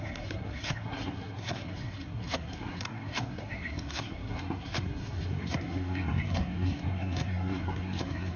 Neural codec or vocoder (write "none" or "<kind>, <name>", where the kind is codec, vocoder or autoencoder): codec, SNAC